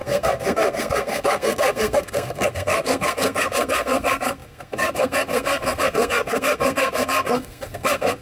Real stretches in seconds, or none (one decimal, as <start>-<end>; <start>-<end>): none